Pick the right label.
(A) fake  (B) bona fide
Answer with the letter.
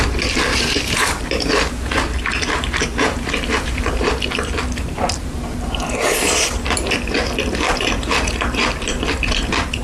A